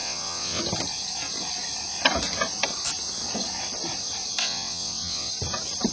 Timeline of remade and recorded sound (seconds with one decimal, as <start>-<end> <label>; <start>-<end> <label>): 0.0-0.6 remade; 0.6-4.4 recorded; 4.4-5.3 remade; 5.3-5.9 recorded